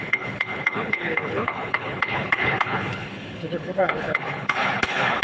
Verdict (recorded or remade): remade